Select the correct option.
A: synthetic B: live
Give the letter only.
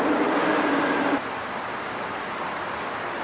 B